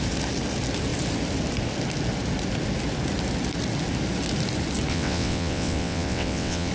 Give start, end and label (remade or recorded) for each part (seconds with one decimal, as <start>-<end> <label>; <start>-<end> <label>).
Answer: 0.0-4.9 recorded; 4.9-6.7 remade